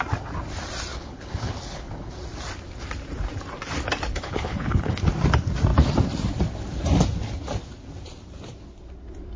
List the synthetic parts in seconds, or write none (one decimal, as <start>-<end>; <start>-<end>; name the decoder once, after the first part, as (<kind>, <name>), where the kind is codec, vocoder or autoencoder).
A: 0.9-2.1 (codec, HILCodec); 4.1-5.0